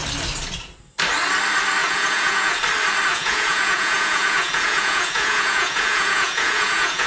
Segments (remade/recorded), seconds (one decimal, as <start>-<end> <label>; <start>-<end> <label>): 0.0-1.8 recorded; 1.8-2.6 remade; 2.6-3.1 recorded; 3.1-7.1 remade